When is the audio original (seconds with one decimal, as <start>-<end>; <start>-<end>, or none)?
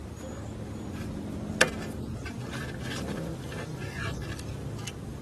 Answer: 0.0-5.2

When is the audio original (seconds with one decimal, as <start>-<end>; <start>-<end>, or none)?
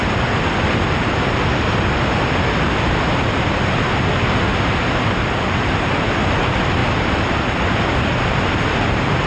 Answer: 0.0-1.4; 4.5-5.4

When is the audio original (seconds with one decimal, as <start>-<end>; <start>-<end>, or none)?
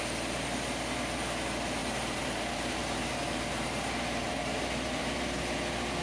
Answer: 0.0-1.8; 5.4-6.0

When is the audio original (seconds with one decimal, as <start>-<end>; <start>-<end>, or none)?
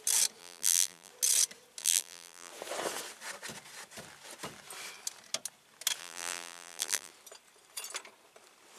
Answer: 0.0-0.4; 1.1-1.8; 2.5-6.0; 7.1-8.8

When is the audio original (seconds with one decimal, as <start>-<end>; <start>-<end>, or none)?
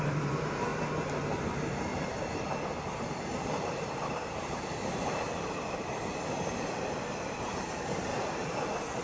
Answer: 0.7-1.4; 1.9-3.0; 8.1-9.0